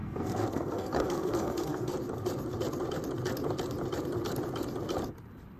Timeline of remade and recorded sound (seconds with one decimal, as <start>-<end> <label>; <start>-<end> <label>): 0.0-1.9 remade; 1.9-5.6 recorded